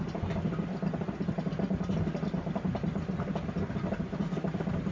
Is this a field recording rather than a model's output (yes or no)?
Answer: yes